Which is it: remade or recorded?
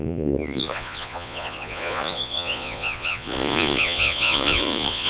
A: remade